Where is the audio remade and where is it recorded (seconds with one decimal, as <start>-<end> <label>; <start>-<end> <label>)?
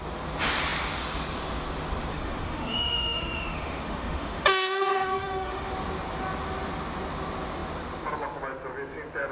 0.0-2.1 recorded; 2.1-5.7 remade; 5.7-9.3 recorded